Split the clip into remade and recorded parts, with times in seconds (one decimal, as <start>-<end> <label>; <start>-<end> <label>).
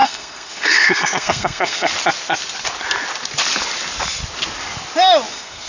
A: 0.0-1.9 remade; 1.9-5.3 recorded; 5.3-5.7 remade